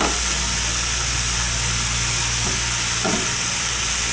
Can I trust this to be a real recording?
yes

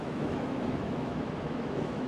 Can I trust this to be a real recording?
no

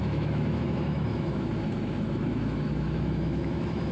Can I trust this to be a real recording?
no